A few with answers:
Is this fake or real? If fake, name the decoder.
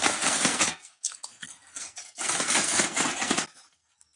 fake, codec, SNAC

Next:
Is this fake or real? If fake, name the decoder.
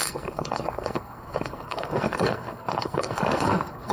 fake, codec, SNAC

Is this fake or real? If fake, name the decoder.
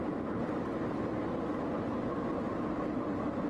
real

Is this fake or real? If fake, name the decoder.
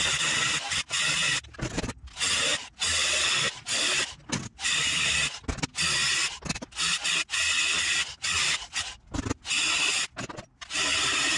real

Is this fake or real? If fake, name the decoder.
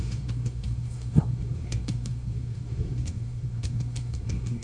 fake, codec, SNAC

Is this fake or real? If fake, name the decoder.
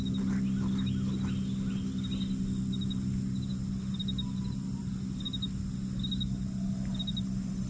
real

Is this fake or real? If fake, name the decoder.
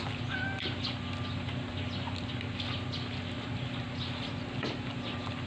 real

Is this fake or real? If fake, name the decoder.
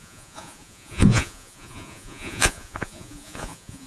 fake, vocoder, Vocos